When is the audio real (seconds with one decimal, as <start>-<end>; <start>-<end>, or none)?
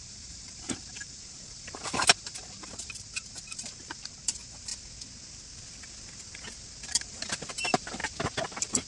4.7-6.9; 8.0-8.9